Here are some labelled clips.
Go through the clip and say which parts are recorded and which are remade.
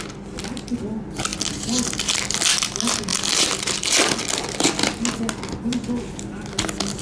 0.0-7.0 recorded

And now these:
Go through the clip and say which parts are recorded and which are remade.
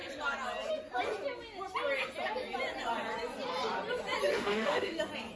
0.0-4.3 recorded; 4.3-5.0 remade; 5.0-5.4 recorded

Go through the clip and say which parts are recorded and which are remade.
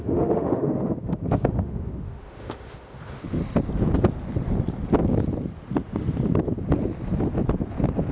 0.0-3.4 remade; 3.4-8.1 recorded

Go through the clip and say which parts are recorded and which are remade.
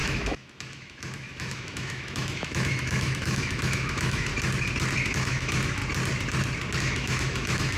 0.0-4.3 remade; 4.3-5.1 recorded; 5.1-5.8 remade; 5.8-6.8 recorded; 6.8-7.8 remade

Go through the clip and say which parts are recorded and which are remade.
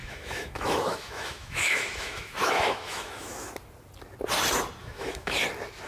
0.0-3.5 remade; 3.5-4.8 recorded; 4.8-5.4 remade; 5.4-5.9 recorded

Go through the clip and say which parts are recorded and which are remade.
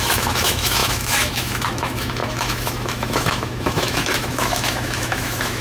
0.0-5.6 remade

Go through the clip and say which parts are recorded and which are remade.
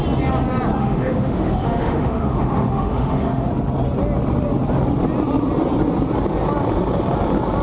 0.0-0.8 recorded; 0.8-3.5 remade; 3.5-7.6 recorded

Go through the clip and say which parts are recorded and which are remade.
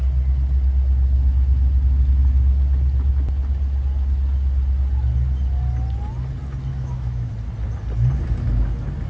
0.0-6.7 recorded; 6.7-7.3 remade; 7.3-9.1 recorded